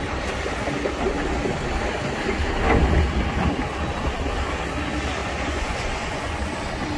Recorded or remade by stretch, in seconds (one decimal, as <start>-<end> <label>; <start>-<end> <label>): 0.0-5.2 recorded; 5.2-6.5 remade; 6.5-7.0 recorded